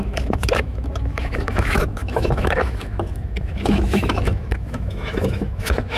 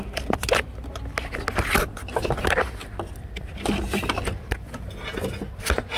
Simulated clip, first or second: first